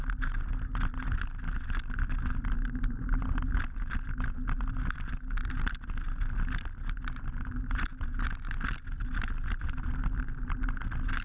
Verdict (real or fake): real